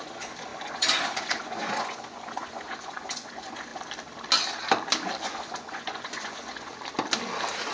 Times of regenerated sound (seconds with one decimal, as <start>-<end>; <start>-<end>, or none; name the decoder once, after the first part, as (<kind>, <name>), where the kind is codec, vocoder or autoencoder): 0.0-3.7 (vocoder, Vocos); 5.2-6.7

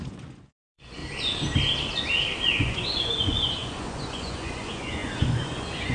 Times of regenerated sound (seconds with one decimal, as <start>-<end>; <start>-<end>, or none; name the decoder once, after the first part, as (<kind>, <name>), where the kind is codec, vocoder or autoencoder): 0.0-1.0 (vocoder, Vocos); 2.5-5.9

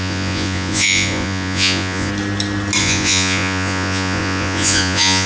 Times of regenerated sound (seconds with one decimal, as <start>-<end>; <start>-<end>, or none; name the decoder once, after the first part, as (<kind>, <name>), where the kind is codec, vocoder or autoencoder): 0.0-2.1 (vocoder, Vocos); 2.8-5.3

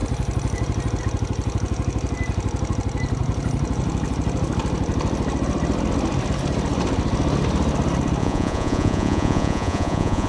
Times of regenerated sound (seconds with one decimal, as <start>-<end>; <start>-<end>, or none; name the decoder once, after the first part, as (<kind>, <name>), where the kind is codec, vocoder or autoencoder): 8.2-10.3 (vocoder, Vocos)

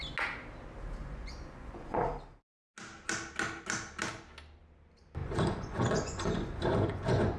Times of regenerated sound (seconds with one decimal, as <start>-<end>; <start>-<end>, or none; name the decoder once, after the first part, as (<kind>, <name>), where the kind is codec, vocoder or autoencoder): 1.0-2.0 (vocoder, Vocos); 5.2-7.4